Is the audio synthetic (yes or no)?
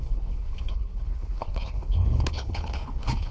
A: yes